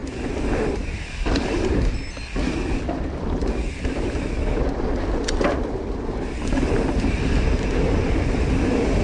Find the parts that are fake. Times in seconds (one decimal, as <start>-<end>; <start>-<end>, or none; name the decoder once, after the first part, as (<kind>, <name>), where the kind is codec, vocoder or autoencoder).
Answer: none